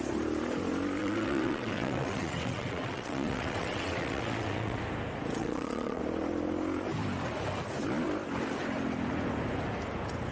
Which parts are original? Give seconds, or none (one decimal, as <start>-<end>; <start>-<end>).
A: 0.0-1.0; 4.8-5.4; 6.0-10.3